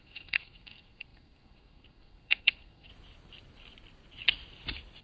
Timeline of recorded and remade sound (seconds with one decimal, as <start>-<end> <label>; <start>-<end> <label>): 0.0-2.9 remade; 2.9-5.0 recorded